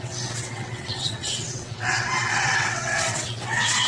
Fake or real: fake